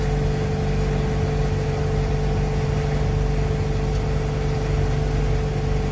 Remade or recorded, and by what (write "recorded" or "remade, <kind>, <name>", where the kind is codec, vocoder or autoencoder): recorded